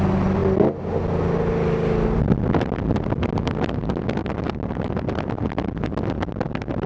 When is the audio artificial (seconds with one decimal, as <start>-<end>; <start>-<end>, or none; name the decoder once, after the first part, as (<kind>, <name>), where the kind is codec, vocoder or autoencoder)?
none